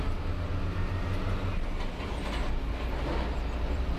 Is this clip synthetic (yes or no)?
no